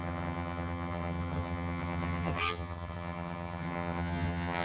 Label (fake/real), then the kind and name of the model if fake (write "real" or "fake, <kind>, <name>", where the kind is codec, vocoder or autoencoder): fake, vocoder, HiFi-GAN